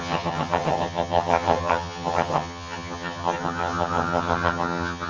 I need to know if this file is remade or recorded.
remade